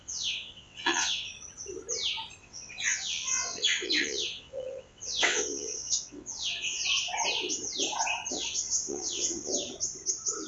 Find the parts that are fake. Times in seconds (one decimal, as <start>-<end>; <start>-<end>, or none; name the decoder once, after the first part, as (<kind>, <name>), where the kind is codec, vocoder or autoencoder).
0.0-1.3 (vocoder, WaveNeXt); 2.4-6.8; 8.3-9.5